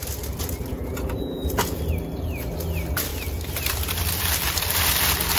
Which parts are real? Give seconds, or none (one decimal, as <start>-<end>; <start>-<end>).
0.0-0.7; 1.8-5.4